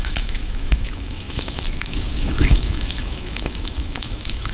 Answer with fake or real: fake